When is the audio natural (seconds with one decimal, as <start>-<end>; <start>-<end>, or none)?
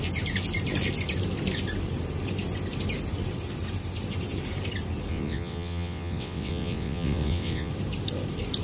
0.0-5.1; 7.7-8.6